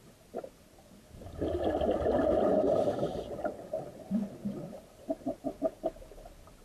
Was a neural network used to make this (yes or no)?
no